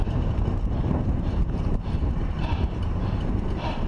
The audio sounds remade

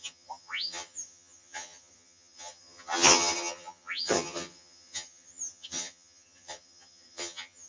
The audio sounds remade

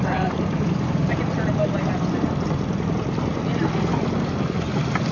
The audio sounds recorded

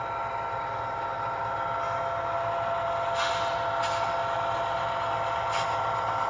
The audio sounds recorded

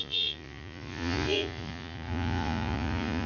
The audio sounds remade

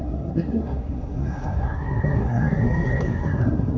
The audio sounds remade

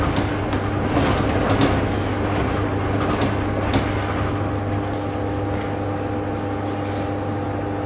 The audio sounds recorded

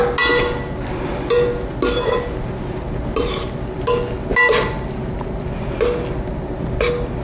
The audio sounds recorded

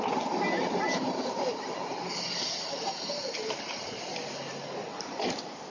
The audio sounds recorded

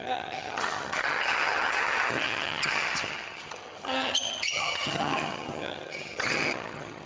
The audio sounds remade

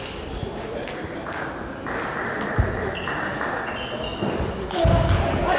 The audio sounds recorded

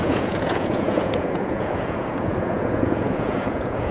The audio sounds remade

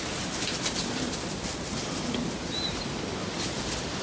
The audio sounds recorded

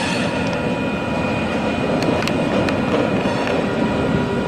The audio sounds recorded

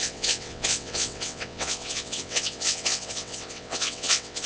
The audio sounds remade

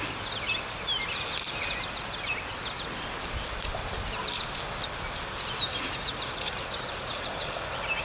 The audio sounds recorded